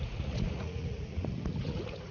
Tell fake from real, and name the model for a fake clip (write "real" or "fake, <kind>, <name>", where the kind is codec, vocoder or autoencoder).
fake, vocoder, Vocos